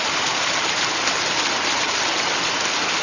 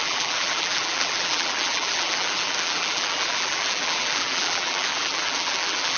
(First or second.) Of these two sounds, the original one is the first